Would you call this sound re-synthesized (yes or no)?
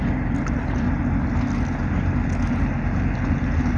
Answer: no